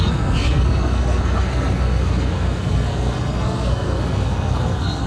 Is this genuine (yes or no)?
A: no